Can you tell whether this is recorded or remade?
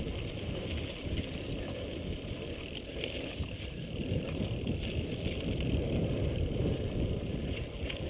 remade